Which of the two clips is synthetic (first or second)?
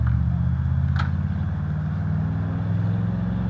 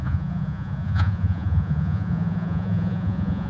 second